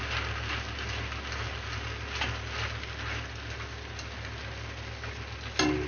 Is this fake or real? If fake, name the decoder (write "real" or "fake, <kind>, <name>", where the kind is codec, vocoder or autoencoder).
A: real